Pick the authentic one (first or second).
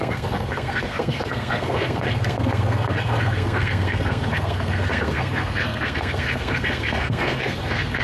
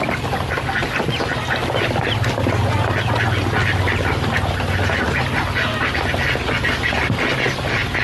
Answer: second